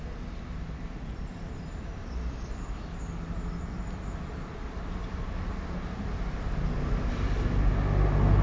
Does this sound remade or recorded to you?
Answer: recorded